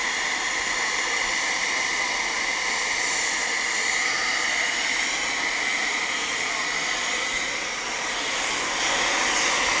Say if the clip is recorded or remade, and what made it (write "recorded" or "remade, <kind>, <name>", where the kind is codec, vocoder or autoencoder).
recorded